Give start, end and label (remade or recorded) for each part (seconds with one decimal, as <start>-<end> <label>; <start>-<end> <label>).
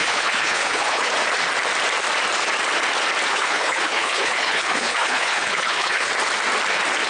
0.0-1.1 remade; 1.1-3.3 recorded; 3.3-6.1 remade; 6.1-7.1 recorded